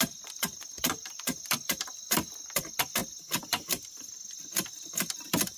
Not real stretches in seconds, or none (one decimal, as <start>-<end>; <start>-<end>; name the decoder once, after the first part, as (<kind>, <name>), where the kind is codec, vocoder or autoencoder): none